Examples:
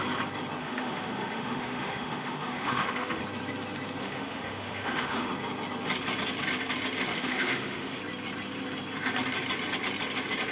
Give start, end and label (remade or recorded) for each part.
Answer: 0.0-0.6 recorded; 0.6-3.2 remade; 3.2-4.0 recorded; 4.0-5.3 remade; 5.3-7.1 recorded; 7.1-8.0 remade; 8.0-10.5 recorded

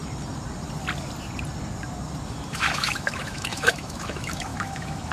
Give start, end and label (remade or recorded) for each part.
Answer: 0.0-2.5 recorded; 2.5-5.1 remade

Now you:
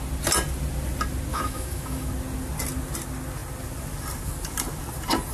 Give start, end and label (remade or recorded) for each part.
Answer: 0.0-1.3 recorded; 1.3-2.1 remade; 2.1-5.3 recorded